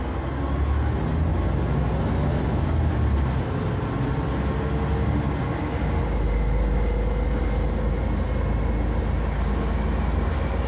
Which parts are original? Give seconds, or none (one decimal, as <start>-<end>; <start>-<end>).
0.0-10.7